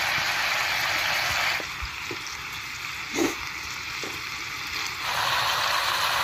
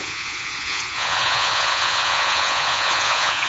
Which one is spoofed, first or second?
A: second